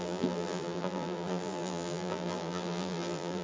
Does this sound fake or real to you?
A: fake